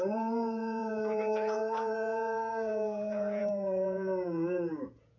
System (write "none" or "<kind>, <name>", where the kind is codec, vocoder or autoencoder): vocoder, Vocos